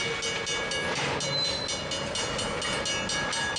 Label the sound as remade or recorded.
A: recorded